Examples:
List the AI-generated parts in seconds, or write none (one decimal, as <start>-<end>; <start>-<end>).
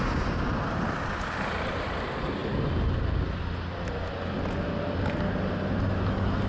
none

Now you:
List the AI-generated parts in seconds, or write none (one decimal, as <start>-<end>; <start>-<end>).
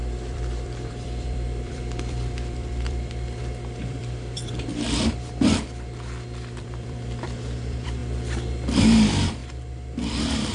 0.0-4.7; 6.6-8.0; 8.8-9.4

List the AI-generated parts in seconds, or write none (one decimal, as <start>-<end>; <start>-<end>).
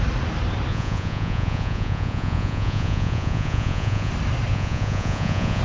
0.7-4.1; 4.5-5.6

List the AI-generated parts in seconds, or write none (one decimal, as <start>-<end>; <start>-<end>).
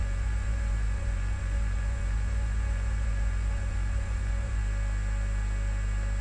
0.0-4.6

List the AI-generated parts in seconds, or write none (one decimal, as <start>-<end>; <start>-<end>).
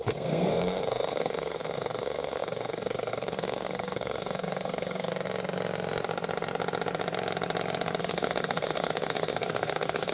0.0-5.1; 8.0-10.1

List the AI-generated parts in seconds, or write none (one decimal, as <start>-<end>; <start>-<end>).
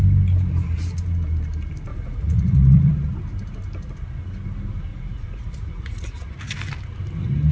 1.9-2.9; 4.9-6.2